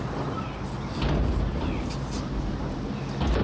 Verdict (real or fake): real